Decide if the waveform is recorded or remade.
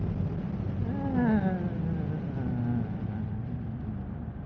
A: recorded